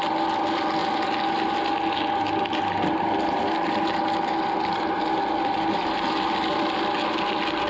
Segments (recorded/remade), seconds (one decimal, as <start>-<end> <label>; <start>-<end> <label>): 0.0-7.7 recorded